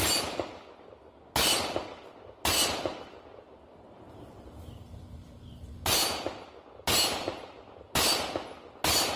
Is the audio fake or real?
real